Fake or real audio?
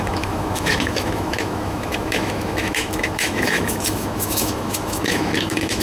fake